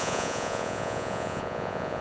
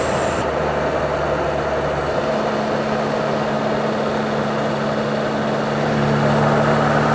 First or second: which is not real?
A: first